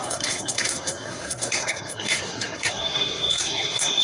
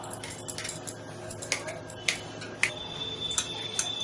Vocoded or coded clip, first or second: first